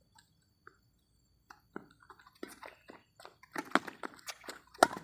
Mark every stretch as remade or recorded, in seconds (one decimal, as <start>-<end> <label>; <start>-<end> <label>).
0.0-5.0 recorded